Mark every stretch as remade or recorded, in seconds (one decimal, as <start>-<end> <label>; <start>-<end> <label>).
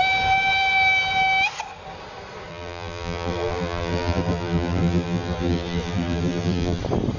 0.0-2.5 recorded; 2.5-6.8 remade; 6.8-7.2 recorded